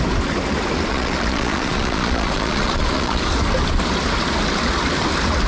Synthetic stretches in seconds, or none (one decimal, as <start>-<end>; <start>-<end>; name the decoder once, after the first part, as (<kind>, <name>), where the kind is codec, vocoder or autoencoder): 0.9-3.2 (vocoder, Vocos)